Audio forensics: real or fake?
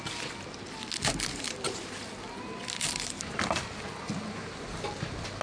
real